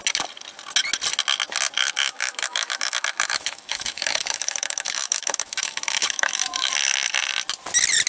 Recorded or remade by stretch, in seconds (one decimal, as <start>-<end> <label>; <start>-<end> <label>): 0.0-1.8 recorded; 1.8-6.7 remade; 6.7-8.1 recorded